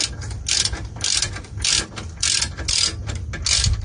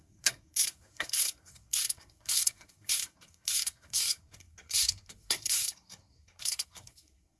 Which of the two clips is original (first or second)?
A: first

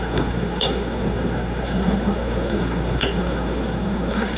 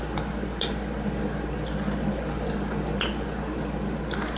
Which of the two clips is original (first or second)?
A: second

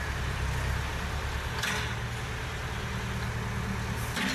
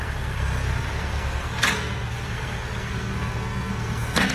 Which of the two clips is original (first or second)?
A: first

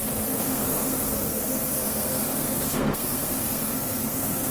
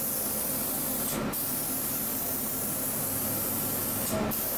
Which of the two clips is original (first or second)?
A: second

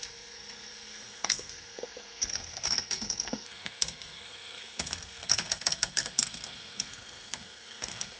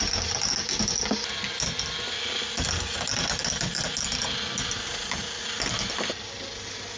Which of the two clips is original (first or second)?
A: second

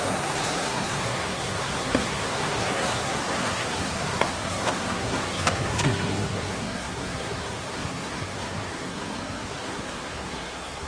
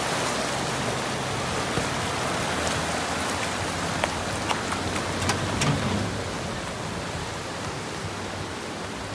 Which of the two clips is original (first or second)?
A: second